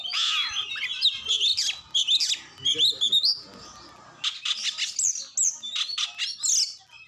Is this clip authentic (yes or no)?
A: yes